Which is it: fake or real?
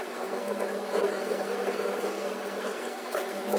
fake